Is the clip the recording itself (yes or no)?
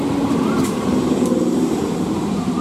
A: no